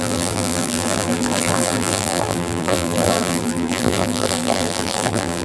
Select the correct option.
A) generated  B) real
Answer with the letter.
A